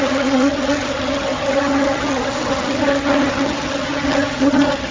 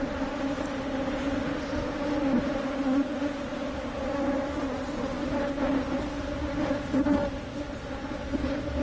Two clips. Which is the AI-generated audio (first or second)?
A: first